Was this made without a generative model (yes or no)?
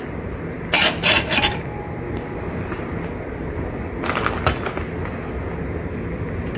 yes